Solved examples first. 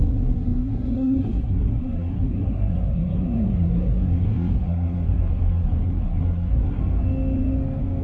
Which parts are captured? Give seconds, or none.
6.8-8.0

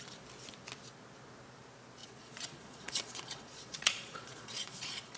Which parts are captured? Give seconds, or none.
0.0-2.0

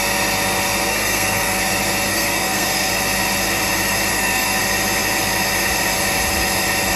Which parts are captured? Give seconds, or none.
0.0-0.9; 1.6-2.1; 2.9-4.1; 4.6-7.0

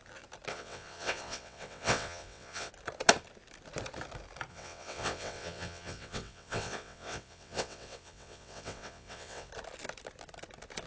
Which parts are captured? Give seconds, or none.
0.0-0.5; 2.7-4.5; 9.5-10.9

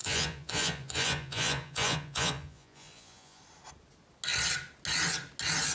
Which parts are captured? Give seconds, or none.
3.4-5.7